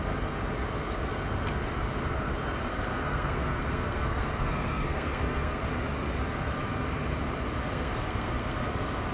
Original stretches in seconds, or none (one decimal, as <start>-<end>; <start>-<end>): 0.0-2.7; 5.7-7.6; 8.7-9.1